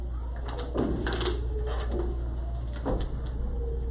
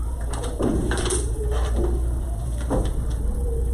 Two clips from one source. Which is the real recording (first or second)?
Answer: first